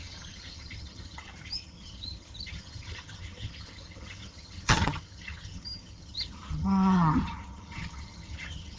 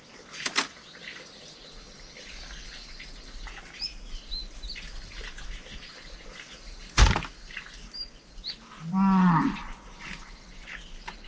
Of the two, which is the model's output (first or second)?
first